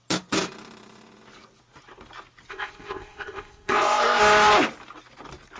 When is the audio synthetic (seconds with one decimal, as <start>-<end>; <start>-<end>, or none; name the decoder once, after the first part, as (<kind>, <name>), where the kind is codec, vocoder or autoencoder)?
2.5-4.2 (codec, ZipCodec)